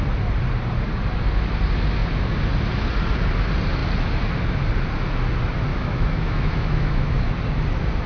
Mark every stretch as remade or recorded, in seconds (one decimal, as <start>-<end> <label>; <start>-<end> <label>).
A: 0.0-5.7 recorded; 5.7-7.3 remade; 7.3-8.1 recorded